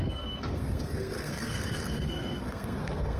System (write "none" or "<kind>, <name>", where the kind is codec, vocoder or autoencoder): codec, SNAC